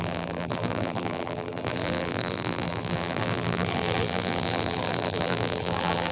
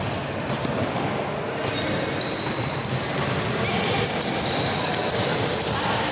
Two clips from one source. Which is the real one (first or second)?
second